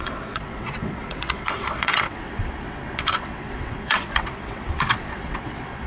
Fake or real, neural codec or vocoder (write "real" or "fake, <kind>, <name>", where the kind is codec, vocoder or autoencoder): fake, vocoder, WaveNeXt